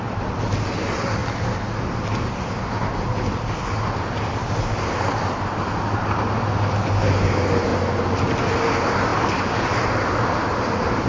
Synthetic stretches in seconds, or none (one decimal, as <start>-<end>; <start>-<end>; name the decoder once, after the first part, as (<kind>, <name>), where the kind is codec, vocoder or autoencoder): none